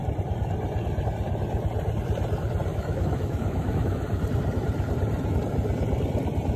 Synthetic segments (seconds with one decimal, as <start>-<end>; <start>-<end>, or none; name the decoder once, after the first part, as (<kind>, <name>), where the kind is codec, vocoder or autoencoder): 2.7-4.2 (autoencoder, DAC-VAE)